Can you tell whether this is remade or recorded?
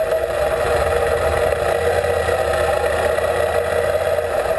recorded